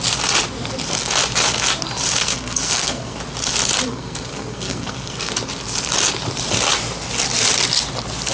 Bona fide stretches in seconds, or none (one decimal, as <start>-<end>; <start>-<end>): 0.0-2.2; 3.2-3.9; 5.3-8.3